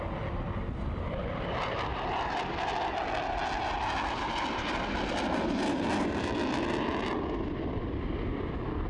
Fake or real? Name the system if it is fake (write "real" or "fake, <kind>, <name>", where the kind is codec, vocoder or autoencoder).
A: real